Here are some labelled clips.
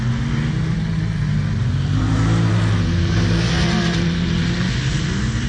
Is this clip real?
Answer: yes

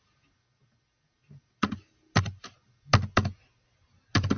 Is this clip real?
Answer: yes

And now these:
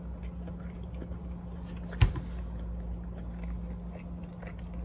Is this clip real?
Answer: yes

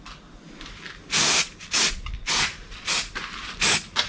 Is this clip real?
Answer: yes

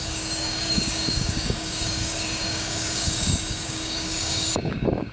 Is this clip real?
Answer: no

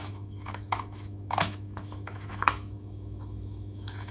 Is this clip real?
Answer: no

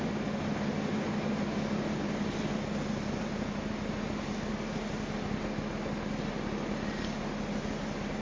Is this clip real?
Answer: yes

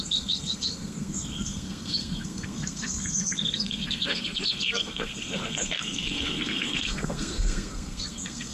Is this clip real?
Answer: no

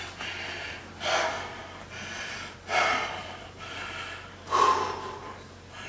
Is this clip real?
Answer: yes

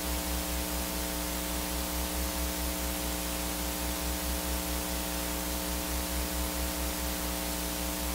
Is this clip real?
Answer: yes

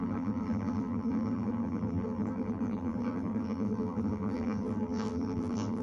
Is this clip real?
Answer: no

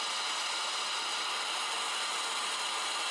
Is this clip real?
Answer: yes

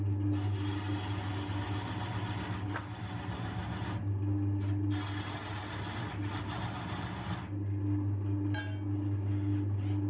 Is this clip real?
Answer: yes